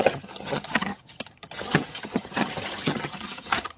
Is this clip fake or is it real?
fake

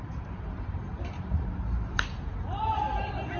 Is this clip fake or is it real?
fake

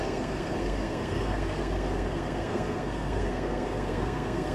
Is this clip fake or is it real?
fake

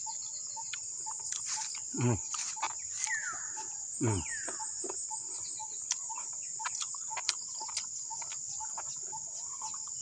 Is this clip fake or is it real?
real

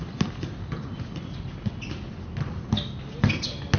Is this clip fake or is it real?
real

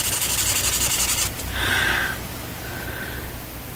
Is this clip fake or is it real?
fake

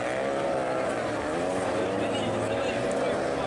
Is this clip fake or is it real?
real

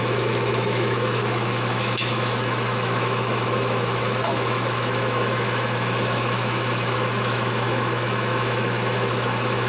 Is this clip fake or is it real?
fake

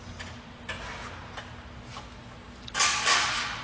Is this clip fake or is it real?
real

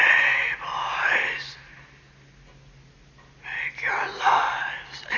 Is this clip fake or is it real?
real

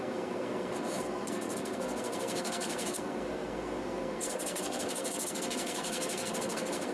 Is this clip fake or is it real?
fake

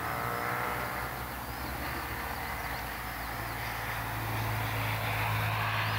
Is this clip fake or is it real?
real